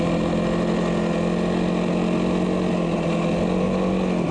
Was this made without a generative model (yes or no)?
yes